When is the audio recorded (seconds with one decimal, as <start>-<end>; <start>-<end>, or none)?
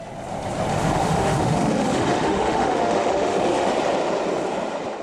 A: 0.0-0.7; 3.7-5.0